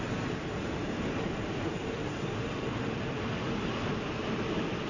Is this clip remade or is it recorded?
recorded